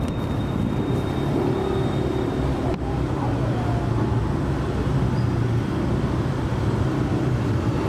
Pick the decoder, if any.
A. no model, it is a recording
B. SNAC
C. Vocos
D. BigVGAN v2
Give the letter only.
A